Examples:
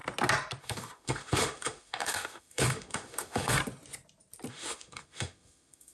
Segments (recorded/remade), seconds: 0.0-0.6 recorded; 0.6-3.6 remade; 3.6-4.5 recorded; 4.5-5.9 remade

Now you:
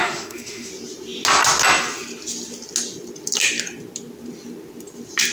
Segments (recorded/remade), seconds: 0.0-0.7 remade; 0.7-5.3 recorded

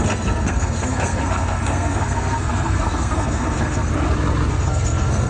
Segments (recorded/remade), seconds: 0.0-3.9 remade; 3.9-4.5 recorded; 4.5-5.3 remade

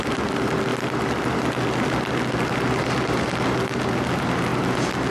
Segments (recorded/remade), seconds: 0.0-5.1 recorded

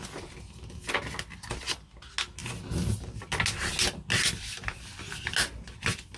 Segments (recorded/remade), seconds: 0.0-6.2 recorded

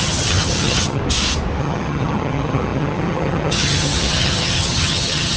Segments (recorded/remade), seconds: 0.0-1.0 remade; 1.0-1.6 recorded; 1.6-5.4 remade

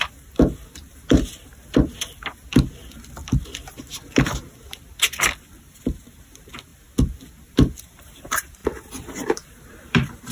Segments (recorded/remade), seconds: 0.0-1.5 remade; 1.5-5.9 recorded; 5.9-6.7 remade; 6.7-7.8 recorded; 7.8-8.6 remade; 8.6-9.1 recorded; 9.1-10.3 remade

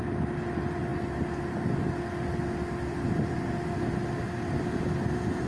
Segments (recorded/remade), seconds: 0.0-5.5 recorded